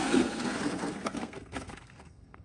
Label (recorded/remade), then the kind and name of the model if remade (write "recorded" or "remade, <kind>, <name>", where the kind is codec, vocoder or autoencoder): remade, codec, SNAC